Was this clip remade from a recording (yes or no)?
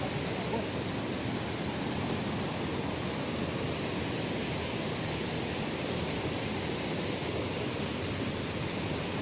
no